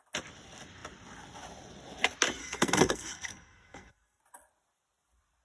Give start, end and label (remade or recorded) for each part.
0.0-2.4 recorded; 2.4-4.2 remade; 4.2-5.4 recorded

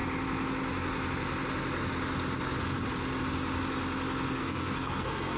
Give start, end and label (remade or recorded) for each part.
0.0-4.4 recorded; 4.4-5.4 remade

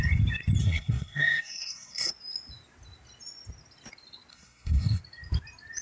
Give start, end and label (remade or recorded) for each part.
0.0-0.6 recorded; 0.6-2.1 remade; 2.1-4.3 recorded; 4.3-5.0 remade; 5.0-5.8 recorded

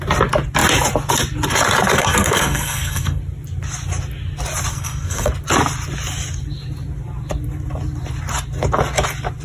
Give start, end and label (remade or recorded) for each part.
0.0-1.9 recorded; 1.9-3.2 remade; 3.2-4.7 recorded; 4.7-5.3 remade; 5.3-9.4 recorded

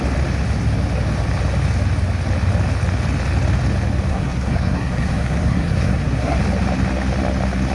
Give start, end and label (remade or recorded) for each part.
0.0-4.1 recorded; 4.1-6.4 remade; 6.4-7.7 recorded

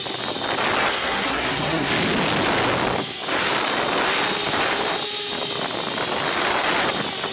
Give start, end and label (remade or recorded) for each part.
0.0-0.9 recorded; 0.9-1.9 remade; 1.9-7.3 recorded

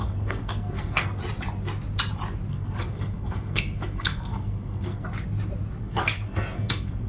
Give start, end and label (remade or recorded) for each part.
0.0-1.2 remade; 1.2-2.5 recorded; 2.5-5.1 remade; 5.1-5.8 recorded; 5.8-7.1 remade

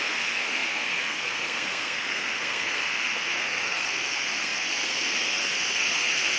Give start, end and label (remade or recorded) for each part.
0.0-6.4 remade